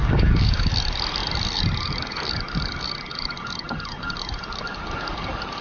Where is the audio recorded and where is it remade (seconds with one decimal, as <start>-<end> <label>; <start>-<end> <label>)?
0.0-0.7 remade; 0.7-5.6 recorded